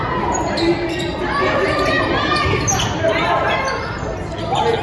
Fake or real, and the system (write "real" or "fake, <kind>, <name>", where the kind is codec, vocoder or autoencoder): real